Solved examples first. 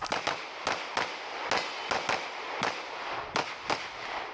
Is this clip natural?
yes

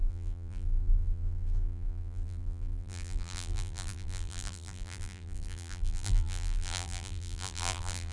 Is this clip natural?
no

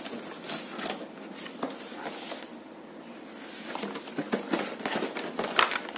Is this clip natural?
yes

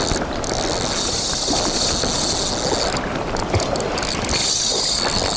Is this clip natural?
yes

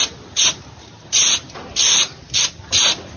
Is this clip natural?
yes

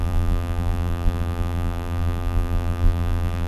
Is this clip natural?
no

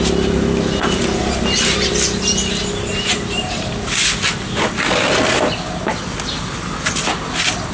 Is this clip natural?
yes